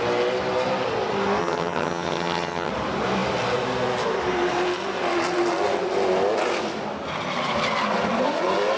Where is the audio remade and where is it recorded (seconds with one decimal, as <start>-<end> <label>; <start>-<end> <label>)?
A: 0.0-1.4 recorded; 1.4-2.7 remade; 2.7-8.8 recorded